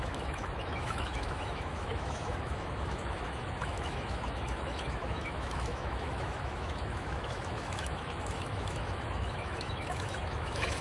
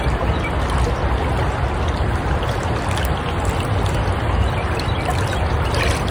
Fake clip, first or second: first